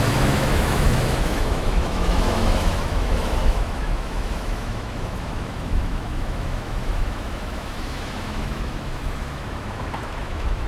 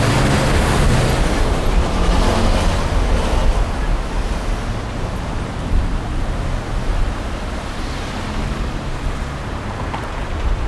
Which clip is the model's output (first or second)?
first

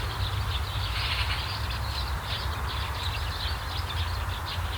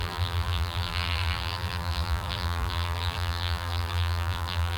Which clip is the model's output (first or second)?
second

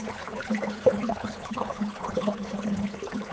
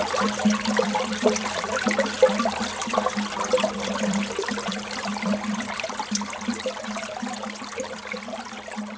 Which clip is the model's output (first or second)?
first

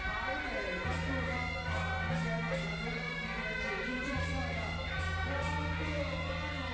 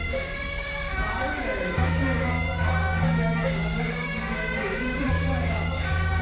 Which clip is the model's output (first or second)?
second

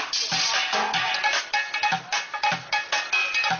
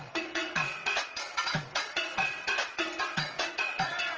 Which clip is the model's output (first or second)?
second